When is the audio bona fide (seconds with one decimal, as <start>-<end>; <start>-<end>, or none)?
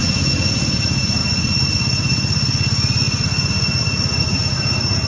0.0-5.1